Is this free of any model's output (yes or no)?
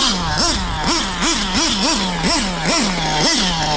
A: yes